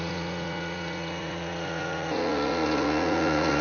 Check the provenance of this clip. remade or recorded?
remade